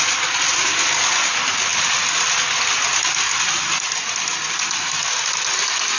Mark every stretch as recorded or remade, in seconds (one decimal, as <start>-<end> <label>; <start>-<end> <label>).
0.0-6.0 recorded

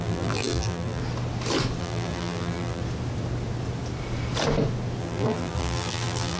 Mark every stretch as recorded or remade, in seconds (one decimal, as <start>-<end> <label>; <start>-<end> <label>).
0.0-1.0 remade; 1.0-1.8 recorded; 1.8-2.8 remade; 2.8-5.0 recorded; 5.0-6.4 remade

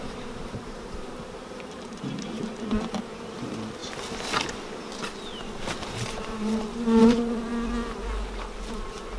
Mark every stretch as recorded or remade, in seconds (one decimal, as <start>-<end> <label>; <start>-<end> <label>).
0.0-3.8 remade; 3.8-5.9 recorded; 5.9-7.5 remade; 7.5-8.7 recorded; 8.7-9.2 remade

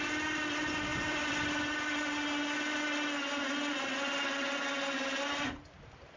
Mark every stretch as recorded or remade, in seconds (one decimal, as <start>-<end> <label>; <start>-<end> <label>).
0.0-0.9 recorded; 0.9-1.7 remade; 1.7-6.2 recorded